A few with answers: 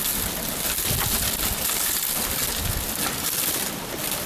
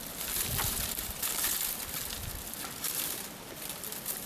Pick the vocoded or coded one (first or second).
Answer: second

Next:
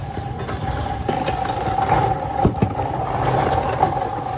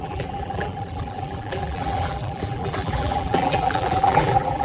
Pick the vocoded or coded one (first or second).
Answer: second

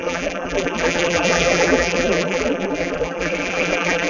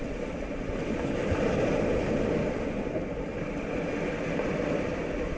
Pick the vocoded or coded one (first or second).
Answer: first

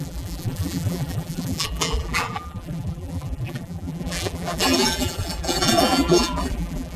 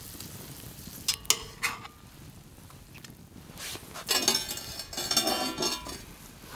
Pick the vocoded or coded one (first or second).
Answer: first